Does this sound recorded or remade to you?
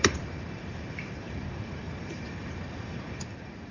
remade